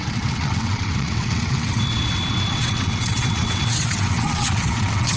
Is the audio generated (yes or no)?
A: yes